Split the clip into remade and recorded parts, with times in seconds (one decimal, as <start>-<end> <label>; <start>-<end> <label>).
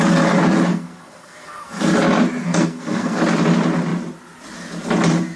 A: 0.0-0.7 recorded; 0.7-1.8 remade; 1.8-2.4 recorded; 2.4-3.2 remade; 3.2-5.4 recorded